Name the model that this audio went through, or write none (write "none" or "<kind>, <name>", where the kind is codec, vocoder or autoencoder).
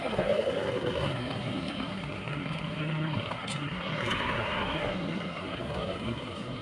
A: codec, SNAC